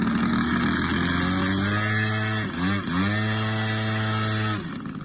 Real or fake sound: real